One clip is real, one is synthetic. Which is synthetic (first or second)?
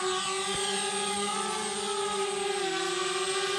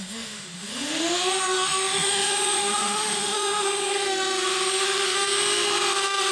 second